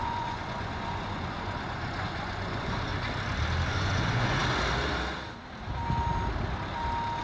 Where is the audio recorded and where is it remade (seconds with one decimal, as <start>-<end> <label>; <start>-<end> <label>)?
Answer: 0.0-2.9 remade; 2.9-3.7 recorded; 3.7-4.4 remade; 4.4-7.2 recorded